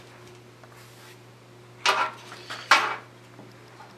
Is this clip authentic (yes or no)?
yes